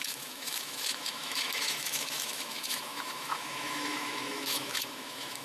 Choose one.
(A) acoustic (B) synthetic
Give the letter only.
B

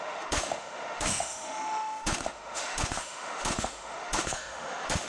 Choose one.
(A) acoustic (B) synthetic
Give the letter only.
B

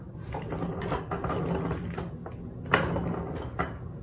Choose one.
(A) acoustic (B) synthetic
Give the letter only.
A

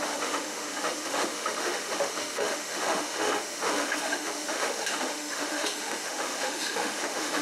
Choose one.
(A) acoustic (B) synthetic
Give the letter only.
B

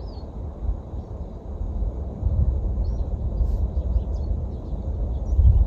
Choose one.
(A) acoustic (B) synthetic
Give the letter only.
A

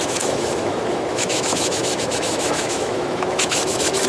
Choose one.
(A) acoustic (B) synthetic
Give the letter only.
B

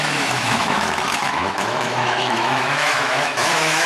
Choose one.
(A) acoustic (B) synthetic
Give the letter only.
B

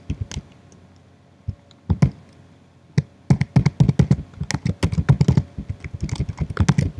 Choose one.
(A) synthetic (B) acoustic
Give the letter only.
B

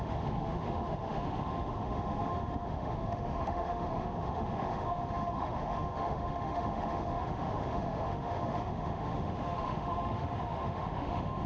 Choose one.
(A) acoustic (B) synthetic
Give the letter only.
B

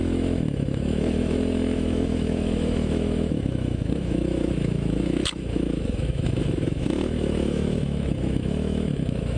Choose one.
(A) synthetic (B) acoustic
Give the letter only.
A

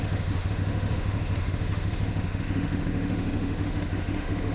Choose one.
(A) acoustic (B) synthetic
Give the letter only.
B